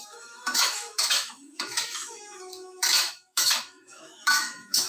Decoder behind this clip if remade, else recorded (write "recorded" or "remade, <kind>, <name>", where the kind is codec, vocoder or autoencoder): remade, autoencoder, DAC-VAE